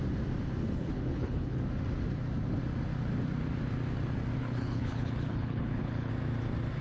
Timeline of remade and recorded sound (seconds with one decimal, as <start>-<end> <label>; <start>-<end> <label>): 0.0-0.6 recorded; 0.6-1.6 remade; 1.6-4.4 recorded; 4.4-6.1 remade; 6.1-6.8 recorded